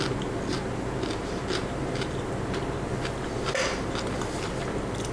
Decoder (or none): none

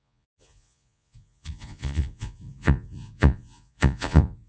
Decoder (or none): vocoder, Vocos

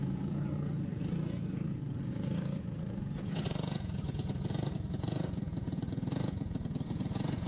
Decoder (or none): vocoder, Vocos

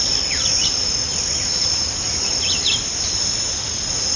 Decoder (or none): none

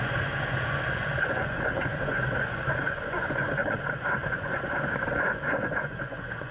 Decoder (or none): vocoder, Vocos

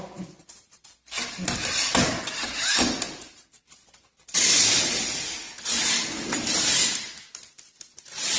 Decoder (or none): none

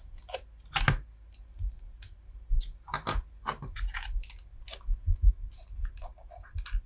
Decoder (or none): none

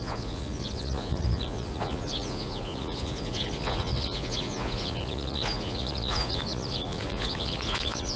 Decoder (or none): vocoder, Vocos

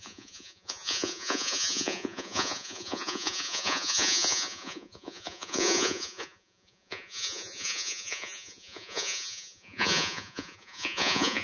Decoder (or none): vocoder, Vocos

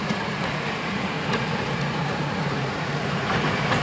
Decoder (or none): vocoder, Vocos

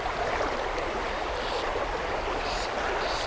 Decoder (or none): none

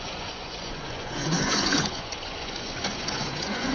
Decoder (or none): vocoder, Vocos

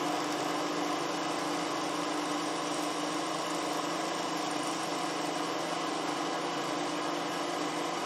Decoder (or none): none